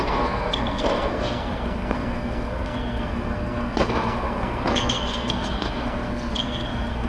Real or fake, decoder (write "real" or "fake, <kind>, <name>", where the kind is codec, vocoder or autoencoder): fake, codec, SNAC